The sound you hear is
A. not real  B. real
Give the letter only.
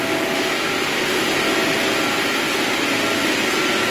B